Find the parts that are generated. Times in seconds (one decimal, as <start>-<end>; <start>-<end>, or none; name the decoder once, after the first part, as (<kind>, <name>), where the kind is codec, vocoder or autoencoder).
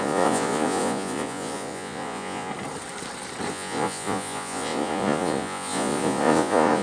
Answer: 0.0-2.5 (vocoder, Vocos); 3.5-6.8